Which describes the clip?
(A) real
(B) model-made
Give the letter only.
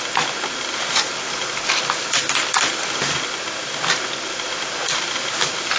A